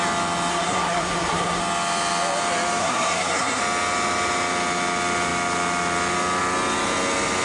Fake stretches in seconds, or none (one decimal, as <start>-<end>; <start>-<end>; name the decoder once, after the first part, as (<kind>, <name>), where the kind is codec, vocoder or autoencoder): 0.5-1.6 (codec, SNAC); 2.8-3.6